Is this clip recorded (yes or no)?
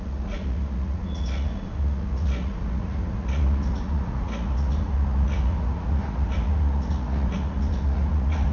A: no